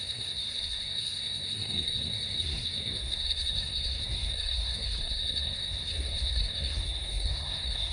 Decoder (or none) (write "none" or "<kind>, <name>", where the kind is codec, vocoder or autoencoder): codec, SNAC